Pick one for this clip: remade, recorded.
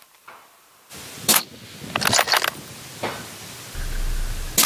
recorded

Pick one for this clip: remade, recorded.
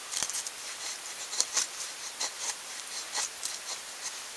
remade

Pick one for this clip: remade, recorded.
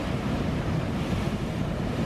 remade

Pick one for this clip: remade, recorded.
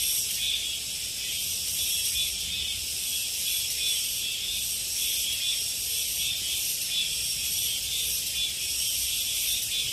recorded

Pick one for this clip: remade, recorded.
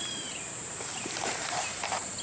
remade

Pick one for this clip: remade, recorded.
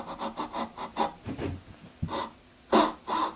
recorded